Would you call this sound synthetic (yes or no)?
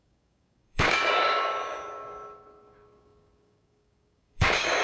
yes